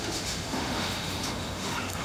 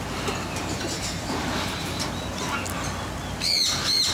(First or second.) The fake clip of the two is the first